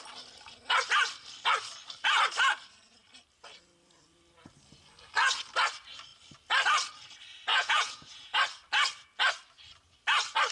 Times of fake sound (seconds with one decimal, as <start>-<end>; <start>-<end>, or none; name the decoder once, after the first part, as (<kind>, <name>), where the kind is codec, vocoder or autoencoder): 7.5-8.3 (vocoder, Vocos)